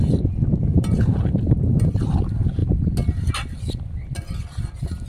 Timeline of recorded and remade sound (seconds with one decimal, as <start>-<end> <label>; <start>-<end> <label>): 0.0-0.7 recorded; 0.7-2.2 remade; 2.2-5.1 recorded